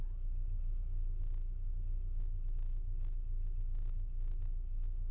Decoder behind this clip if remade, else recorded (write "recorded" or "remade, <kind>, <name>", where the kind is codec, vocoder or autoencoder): recorded